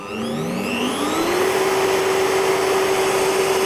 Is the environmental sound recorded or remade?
recorded